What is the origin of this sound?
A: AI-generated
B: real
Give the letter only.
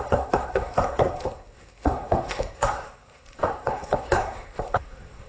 A